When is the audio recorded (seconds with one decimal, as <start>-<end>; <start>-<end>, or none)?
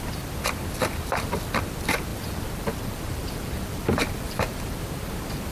0.0-2.1; 4.8-5.5